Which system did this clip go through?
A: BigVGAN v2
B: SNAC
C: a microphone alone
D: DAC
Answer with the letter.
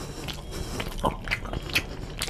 C